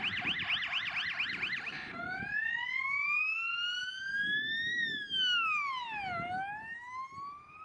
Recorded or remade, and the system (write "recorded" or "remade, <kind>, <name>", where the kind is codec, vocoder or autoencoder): recorded